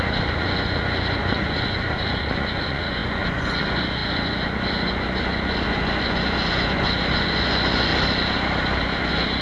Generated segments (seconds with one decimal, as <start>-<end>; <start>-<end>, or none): 0.0-7.9; 8.8-9.4